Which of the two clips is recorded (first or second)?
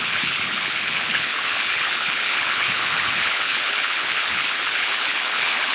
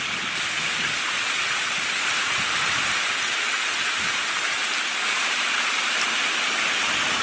second